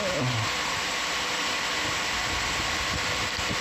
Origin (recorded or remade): recorded